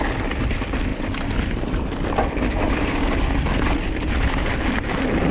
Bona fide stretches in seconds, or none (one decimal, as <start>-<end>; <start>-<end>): 0.0-5.3